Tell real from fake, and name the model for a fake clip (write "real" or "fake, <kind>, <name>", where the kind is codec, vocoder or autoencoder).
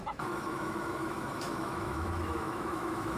fake, autoencoder, DAC-VAE